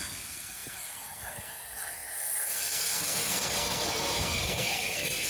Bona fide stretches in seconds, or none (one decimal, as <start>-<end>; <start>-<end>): none